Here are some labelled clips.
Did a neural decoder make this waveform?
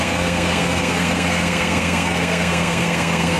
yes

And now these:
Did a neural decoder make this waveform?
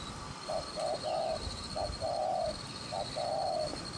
no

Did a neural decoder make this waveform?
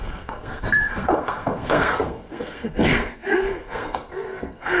yes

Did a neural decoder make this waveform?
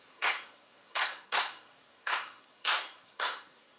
yes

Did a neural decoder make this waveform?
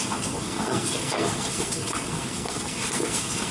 yes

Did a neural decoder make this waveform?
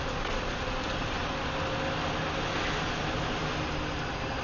no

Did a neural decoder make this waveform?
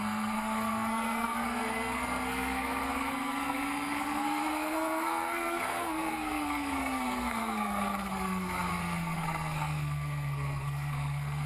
yes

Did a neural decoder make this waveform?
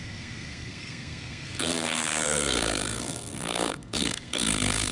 yes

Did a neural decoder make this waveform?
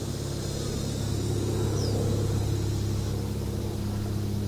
no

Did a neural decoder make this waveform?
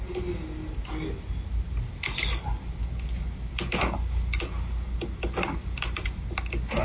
no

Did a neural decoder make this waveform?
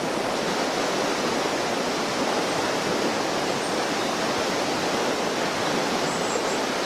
no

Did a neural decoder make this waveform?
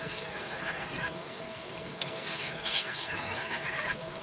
yes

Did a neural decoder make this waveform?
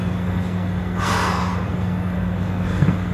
yes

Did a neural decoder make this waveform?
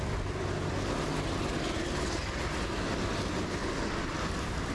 no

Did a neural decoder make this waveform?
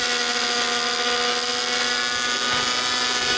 no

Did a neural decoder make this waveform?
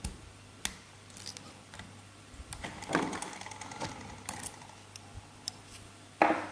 no